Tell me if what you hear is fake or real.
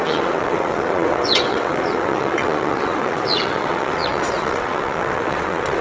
fake